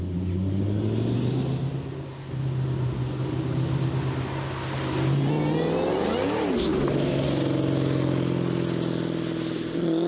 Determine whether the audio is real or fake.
real